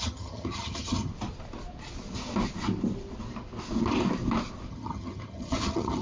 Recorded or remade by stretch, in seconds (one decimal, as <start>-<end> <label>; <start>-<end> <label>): 0.0-1.1 remade; 1.1-4.7 recorded; 4.7-6.0 remade